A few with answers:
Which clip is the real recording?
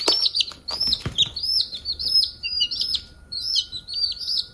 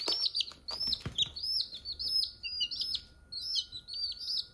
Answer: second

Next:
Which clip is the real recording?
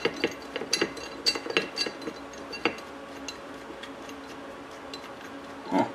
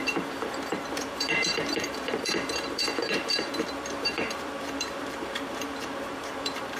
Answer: first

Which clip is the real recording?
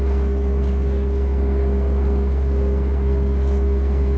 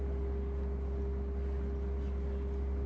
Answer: second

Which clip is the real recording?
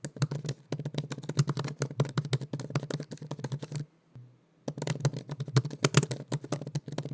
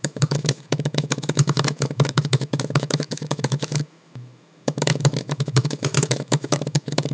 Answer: first